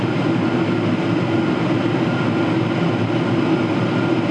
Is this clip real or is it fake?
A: real